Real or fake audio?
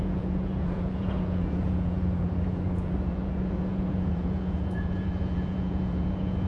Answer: fake